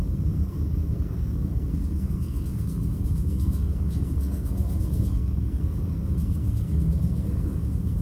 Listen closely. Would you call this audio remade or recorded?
remade